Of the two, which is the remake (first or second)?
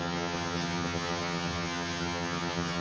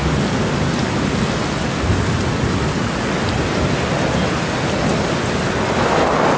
first